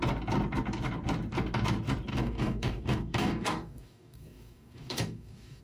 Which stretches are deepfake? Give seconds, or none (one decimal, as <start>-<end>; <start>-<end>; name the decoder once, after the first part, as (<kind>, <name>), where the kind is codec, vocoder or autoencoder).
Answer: 2.1-5.6 (codec, DAC)

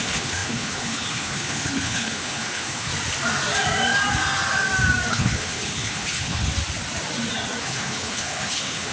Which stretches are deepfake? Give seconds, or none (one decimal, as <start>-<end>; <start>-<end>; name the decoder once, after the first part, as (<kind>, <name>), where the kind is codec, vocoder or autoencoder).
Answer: 0.0-2.9 (codec, HILCodec); 5.1-6.5; 7.6-8.9

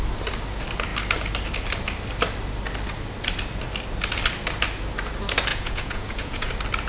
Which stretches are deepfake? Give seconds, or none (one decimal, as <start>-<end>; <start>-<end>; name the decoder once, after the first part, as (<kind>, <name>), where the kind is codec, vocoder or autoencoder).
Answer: 5.5-6.5 (vocoder, Vocos)

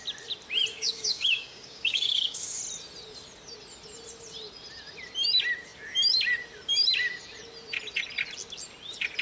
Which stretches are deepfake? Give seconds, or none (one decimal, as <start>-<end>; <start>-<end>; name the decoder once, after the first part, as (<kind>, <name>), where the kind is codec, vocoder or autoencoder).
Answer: 0.7-2.6 (codec, DAC)

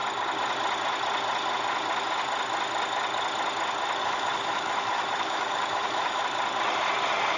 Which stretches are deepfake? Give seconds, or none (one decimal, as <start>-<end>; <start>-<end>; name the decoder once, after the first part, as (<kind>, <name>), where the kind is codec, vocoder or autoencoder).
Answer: 4.0-6.2 (autoencoder, DAC-VAE)

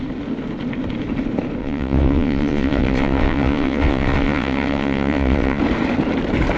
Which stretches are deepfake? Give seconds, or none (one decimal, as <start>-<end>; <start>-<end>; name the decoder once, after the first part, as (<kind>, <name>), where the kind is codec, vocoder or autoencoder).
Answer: 1.6-5.6 (vocoder, WaveNeXt)

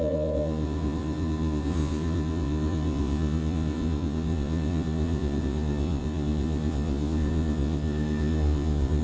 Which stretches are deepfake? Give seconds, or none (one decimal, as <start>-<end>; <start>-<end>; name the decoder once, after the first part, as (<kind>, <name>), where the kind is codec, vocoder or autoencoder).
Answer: 0.0-9.0 (vocoder, Vocos)